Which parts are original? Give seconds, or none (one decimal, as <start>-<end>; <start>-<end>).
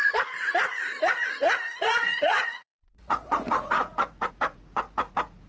none